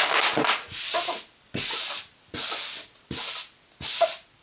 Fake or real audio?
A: real